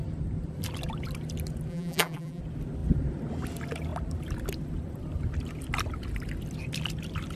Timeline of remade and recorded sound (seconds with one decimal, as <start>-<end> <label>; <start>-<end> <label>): 0.0-1.7 recorded; 1.7-2.4 remade; 2.4-7.4 recorded